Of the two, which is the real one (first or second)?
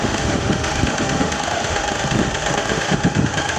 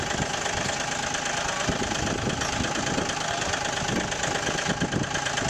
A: second